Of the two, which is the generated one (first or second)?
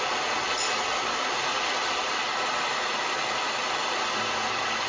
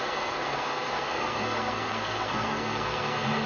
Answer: second